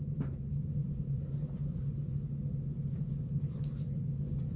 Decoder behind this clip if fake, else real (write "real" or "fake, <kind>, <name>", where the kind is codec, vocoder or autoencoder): fake, vocoder, BigVGAN v2